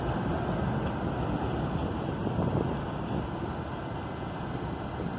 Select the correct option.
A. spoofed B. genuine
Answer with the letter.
B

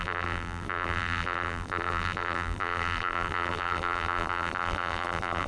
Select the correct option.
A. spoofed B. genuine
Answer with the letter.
A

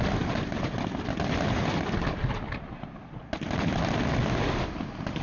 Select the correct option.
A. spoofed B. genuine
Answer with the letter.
B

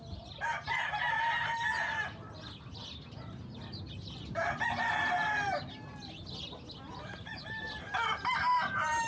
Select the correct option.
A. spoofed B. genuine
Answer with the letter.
B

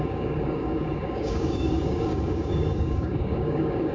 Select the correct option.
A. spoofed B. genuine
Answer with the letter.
A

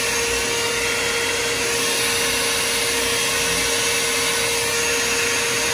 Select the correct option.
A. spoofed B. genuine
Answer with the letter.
B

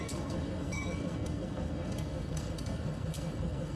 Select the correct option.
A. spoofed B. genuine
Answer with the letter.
A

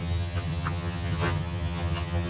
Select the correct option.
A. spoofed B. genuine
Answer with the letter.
A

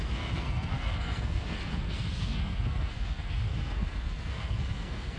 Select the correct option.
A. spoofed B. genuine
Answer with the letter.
A